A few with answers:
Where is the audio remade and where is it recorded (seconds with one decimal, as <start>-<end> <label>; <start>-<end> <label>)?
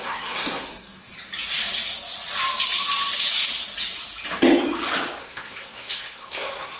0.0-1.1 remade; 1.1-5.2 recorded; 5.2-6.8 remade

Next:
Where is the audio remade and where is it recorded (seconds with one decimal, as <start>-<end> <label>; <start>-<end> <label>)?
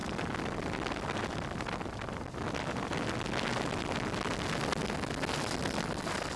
0.0-6.4 recorded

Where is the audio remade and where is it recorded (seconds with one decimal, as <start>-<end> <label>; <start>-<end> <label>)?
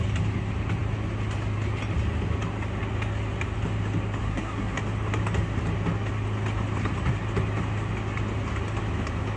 0.0-4.2 recorded; 4.2-4.8 remade; 4.8-9.4 recorded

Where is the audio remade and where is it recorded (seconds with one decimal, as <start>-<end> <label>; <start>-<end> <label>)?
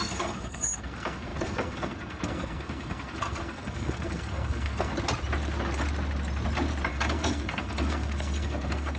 0.0-4.9 remade; 4.9-6.9 recorded; 6.9-9.0 remade